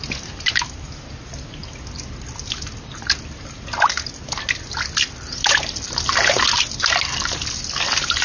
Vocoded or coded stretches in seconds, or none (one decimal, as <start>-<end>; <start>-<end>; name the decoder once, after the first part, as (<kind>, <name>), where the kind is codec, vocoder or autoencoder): none

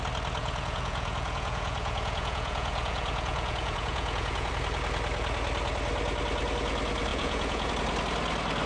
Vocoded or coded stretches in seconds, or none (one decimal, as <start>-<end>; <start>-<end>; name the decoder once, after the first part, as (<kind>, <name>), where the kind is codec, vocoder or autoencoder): 0.4-4.5 (vocoder, Vocos); 7.1-7.7